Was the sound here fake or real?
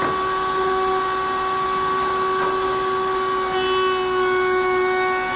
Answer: real